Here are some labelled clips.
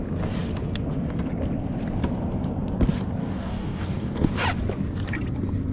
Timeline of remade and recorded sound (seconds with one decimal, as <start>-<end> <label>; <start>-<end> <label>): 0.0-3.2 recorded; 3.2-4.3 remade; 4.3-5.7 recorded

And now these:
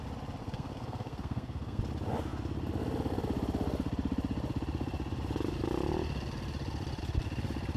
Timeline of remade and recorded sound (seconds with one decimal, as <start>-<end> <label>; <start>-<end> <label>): 0.0-0.4 recorded; 0.4-1.8 remade; 1.8-7.8 recorded

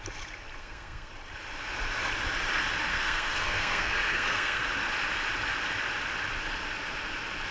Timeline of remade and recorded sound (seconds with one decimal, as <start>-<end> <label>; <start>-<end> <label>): 0.0-0.6 recorded; 0.6-1.1 remade; 1.1-2.9 recorded; 2.9-4.6 remade; 4.6-7.5 recorded